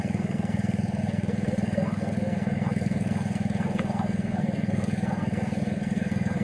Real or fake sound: fake